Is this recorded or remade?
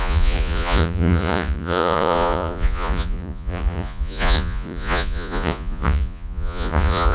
remade